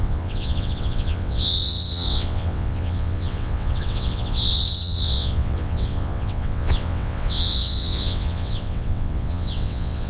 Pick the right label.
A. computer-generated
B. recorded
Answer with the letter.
A